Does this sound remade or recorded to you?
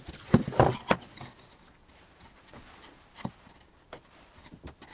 recorded